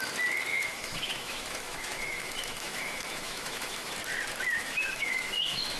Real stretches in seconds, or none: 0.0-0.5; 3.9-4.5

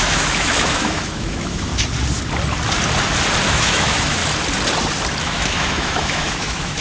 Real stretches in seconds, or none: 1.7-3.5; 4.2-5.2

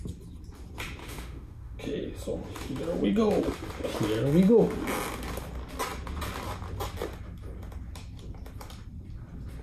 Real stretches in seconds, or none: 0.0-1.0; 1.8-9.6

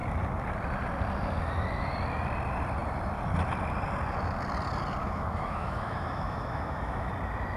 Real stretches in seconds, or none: 0.0-5.0; 7.1-7.6